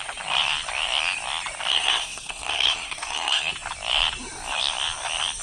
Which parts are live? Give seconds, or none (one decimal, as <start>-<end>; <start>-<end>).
0.0-1.7; 3.5-5.4